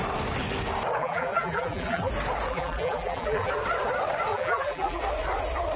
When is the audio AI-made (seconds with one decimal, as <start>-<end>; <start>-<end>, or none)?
1.0-2.1; 2.5-3.5; 4.3-5.0